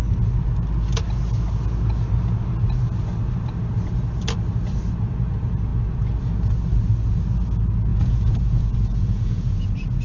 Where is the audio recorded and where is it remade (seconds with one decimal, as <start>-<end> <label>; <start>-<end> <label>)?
0.0-7.9 recorded; 7.9-10.0 remade